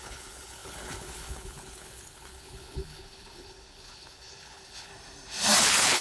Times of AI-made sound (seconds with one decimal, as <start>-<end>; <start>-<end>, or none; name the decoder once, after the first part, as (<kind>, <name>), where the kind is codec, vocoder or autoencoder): 0.0-4.9 (codec, HILCodec); 5.6-6.0